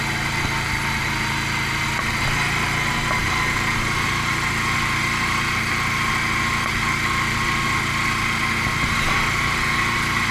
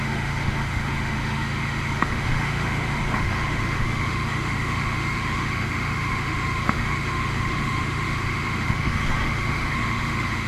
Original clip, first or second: first